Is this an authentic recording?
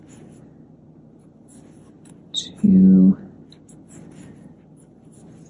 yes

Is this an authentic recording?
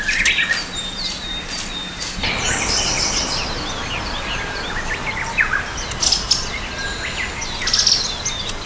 yes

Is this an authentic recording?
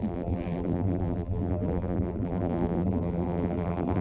no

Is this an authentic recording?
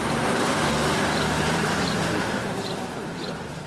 no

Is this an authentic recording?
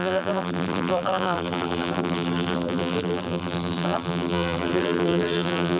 no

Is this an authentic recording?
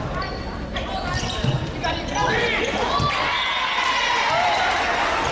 yes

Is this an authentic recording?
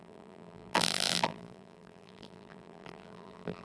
no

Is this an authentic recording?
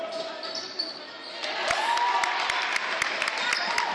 yes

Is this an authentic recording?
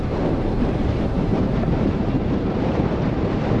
no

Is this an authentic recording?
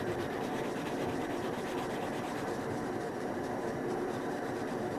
no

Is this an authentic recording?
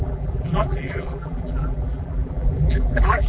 no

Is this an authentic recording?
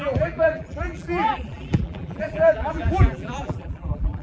no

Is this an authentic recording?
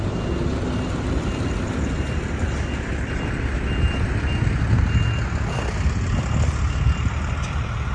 yes